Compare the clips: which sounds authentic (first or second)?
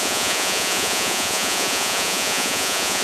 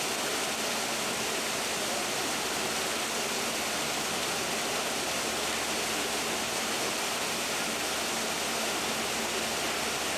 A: second